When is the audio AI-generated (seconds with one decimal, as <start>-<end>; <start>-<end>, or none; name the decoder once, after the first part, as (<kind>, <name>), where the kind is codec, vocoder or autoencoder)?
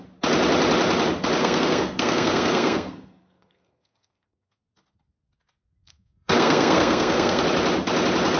1.4-4.6 (codec, SNAC); 5.8-7.4